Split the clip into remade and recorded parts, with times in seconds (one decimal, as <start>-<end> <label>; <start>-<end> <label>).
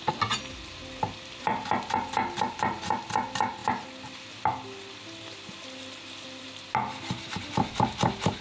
0.0-8.4 recorded